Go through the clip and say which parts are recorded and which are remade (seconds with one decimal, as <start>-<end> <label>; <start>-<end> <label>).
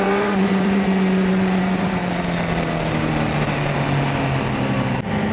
0.0-2.0 remade; 2.0-5.3 recorded